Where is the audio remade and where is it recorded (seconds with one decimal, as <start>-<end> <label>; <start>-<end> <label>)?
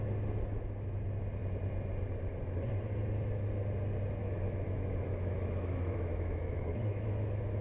0.0-4.2 recorded; 4.2-7.6 remade